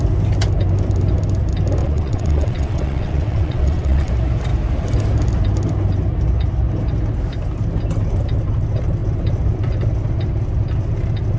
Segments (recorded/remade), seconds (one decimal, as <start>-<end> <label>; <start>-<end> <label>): 0.0-1.8 recorded; 1.8-4.1 remade; 4.1-11.4 recorded